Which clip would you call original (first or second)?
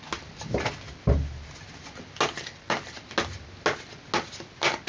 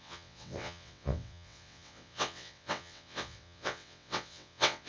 first